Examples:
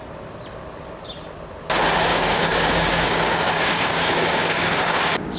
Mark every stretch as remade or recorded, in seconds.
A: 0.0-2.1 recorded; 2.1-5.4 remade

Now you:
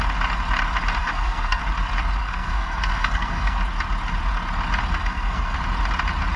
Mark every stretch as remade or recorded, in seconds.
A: 0.0-1.0 recorded; 1.0-1.6 remade; 1.6-2.2 recorded; 2.2-3.6 remade; 3.6-5.0 recorded; 5.0-5.6 remade; 5.6-6.4 recorded

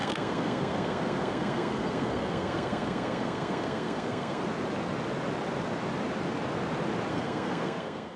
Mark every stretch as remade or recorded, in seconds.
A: 0.0-4.4 remade; 4.4-7.1 recorded; 7.1-8.2 remade

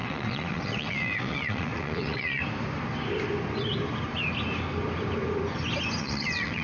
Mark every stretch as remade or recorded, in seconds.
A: 0.0-2.4 remade; 2.4-6.0 recorded; 6.0-6.6 remade

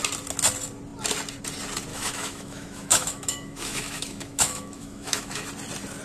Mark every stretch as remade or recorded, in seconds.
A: 0.0-1.9 recorded; 1.9-5.5 remade; 5.5-6.0 recorded

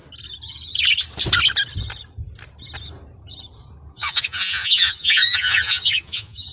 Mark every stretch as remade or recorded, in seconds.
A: 0.0-3.9 recorded; 3.9-6.5 remade